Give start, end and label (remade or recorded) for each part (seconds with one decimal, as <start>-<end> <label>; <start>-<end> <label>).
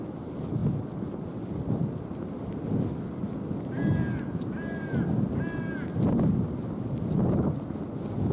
0.0-8.3 recorded